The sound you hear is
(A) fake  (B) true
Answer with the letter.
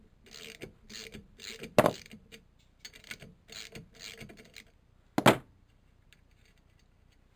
B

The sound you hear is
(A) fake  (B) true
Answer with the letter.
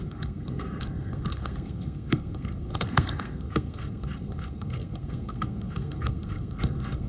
A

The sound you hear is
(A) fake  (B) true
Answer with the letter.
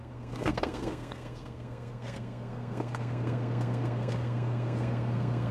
A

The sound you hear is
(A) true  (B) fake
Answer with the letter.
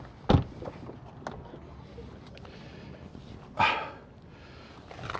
A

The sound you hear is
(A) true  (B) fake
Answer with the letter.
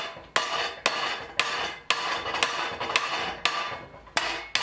A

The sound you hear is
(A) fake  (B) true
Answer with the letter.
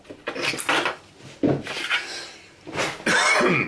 B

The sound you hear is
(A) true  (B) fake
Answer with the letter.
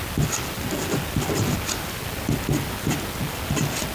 A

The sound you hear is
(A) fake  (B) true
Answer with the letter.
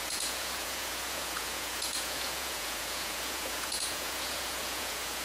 A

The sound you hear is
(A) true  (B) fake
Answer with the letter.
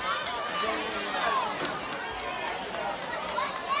A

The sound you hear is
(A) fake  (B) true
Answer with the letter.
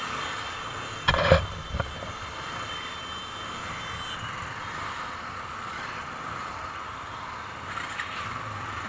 B